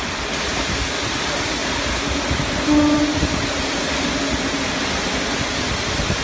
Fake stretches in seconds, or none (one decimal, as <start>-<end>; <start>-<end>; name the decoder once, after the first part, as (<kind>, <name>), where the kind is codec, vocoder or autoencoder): none